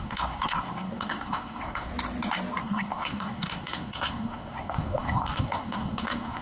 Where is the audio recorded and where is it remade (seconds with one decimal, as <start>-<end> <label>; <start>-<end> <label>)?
0.0-1.9 remade; 1.9-2.6 recorded; 2.6-6.4 remade